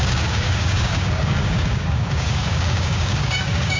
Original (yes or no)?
no